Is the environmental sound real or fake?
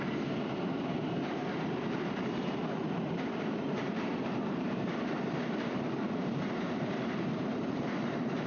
fake